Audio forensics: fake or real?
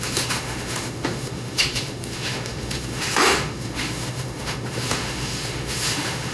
fake